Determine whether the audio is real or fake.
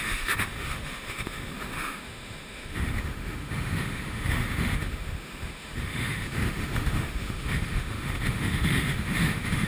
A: fake